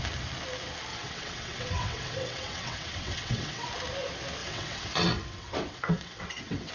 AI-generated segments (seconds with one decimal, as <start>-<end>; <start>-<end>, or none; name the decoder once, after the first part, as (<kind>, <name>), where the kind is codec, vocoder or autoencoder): 0.9-3.7 (vocoder, WaveNeXt); 4.4-6.7